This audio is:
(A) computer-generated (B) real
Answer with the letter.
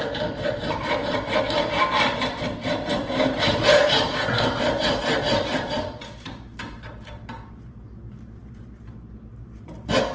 A